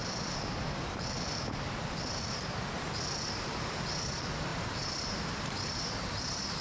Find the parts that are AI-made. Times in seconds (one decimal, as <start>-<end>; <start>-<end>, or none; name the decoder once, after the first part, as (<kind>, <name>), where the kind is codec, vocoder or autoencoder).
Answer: none